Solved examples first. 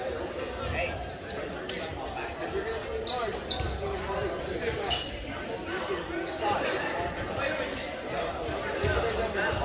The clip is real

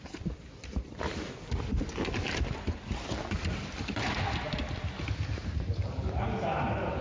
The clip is real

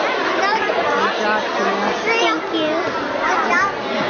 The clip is real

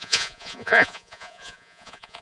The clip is fake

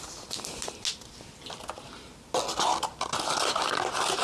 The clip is real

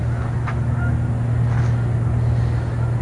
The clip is real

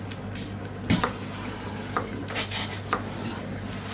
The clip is real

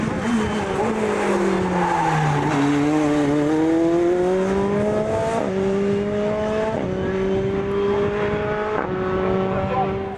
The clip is real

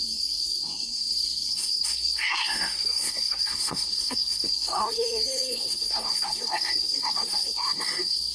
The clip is fake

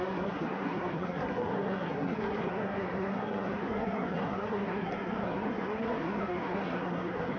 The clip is fake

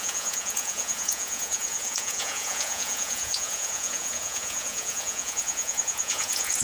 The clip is fake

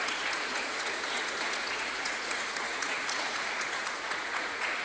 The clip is fake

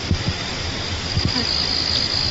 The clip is real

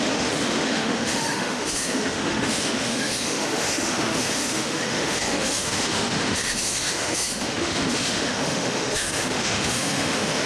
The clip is fake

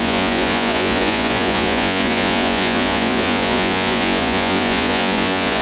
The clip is fake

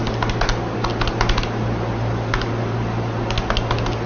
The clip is real